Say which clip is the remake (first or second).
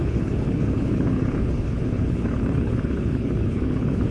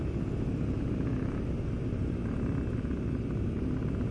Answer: first